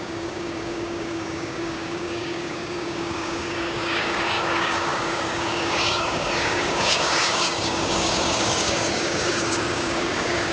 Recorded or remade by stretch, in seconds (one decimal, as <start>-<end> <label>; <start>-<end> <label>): 0.0-10.5 remade